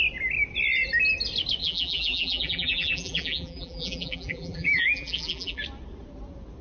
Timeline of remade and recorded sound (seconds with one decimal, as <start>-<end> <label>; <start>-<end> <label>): 0.0-1.6 recorded; 1.6-5.6 remade; 5.6-6.6 recorded